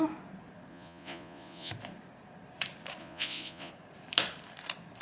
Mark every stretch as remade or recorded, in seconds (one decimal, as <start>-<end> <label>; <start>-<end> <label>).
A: 0.0-0.7 recorded; 0.7-1.7 remade; 1.7-3.0 recorded; 3.0-3.7 remade; 3.7-5.0 recorded